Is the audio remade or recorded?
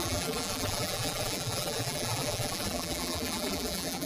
remade